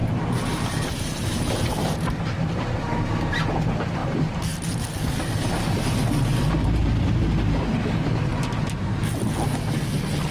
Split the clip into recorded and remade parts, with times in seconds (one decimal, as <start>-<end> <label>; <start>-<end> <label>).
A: 0.0-2.7 remade; 2.7-4.0 recorded; 4.0-6.8 remade; 6.8-8.3 recorded; 8.3-9.3 remade; 9.3-10.3 recorded